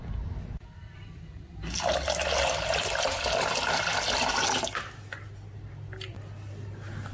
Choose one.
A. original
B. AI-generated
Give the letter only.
A